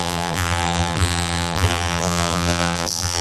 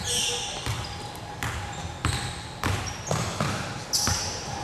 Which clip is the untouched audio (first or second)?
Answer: second